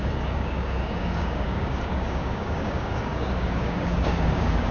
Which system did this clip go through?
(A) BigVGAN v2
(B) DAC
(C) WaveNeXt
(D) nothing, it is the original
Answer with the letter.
B